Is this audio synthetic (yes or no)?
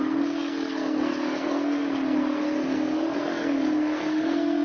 yes